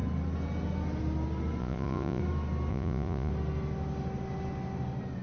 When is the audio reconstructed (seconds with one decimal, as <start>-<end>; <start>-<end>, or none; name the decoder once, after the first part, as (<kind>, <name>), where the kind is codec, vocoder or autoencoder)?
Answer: 1.6-2.2 (vocoder, Vocos); 2.7-3.3